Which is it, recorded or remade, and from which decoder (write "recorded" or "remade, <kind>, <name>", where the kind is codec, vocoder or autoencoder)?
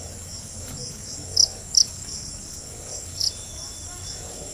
remade, codec, DAC